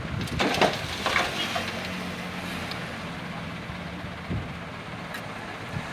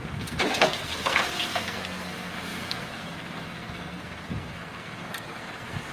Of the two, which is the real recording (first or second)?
first